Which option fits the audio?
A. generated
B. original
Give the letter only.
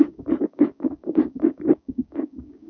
A